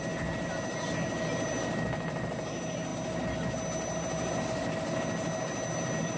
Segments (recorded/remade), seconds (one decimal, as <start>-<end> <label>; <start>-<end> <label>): 0.0-6.2 recorded